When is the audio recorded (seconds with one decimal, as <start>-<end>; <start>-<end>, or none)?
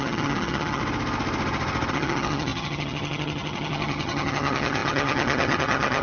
0.8-1.9